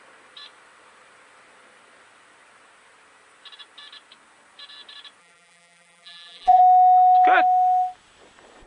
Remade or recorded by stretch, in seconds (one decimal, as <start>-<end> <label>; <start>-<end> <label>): 0.0-5.2 recorded; 5.2-6.6 remade; 6.6-8.7 recorded